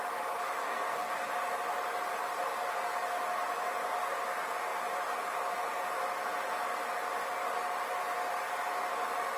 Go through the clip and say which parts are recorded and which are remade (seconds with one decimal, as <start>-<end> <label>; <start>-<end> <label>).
0.0-0.6 recorded; 0.6-1.3 remade; 1.3-9.4 recorded